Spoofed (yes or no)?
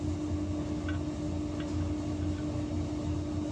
no